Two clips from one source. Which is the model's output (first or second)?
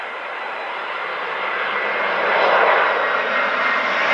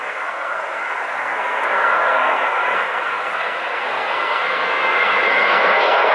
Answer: second